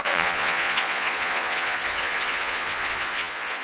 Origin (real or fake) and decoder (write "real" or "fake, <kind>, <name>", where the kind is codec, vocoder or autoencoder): fake, vocoder, Vocos